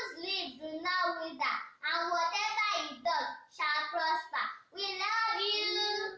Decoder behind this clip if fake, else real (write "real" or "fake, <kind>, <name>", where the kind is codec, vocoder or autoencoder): real